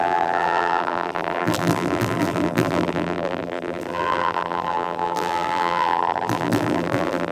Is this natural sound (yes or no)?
no